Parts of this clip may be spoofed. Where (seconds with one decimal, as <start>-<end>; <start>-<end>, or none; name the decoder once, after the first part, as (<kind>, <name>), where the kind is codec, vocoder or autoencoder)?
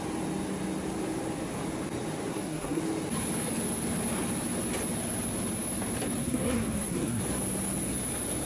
2.3-2.8 (codec, SNAC); 6.2-7.2